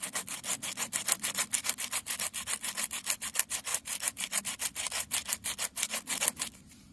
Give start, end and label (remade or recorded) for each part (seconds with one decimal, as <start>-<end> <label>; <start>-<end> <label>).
0.0-6.9 recorded